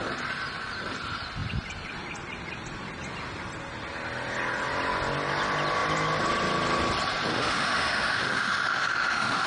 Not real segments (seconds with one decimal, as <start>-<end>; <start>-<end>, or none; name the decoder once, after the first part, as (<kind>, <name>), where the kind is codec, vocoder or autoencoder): 7.3-9.5 (autoencoder, DAC-VAE)